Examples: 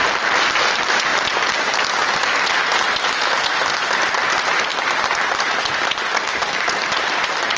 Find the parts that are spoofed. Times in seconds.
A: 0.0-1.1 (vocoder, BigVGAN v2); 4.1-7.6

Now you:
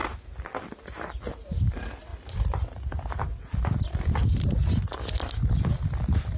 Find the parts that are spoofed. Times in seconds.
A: 2.1-5.5 (vocoder, BigVGAN v2)

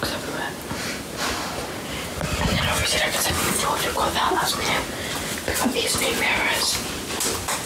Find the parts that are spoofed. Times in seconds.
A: none

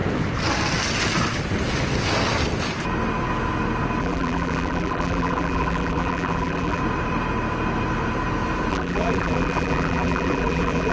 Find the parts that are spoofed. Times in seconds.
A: 4.0-6.8 (vocoder, BigVGAN v2); 8.7-10.9

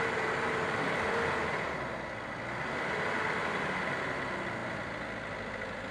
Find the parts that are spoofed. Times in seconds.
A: none

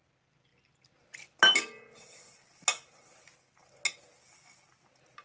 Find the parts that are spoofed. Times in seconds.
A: none

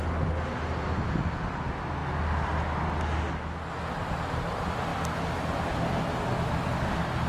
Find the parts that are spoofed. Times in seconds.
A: none